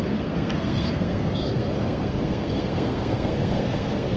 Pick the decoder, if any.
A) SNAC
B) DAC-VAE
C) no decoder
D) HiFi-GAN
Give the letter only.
A